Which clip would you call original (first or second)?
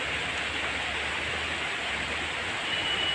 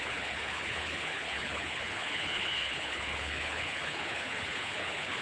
first